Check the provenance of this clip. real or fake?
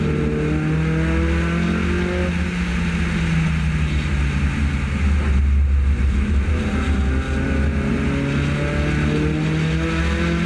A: real